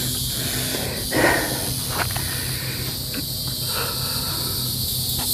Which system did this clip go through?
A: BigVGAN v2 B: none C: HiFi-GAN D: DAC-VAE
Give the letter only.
B